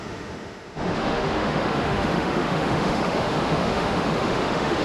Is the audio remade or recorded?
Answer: remade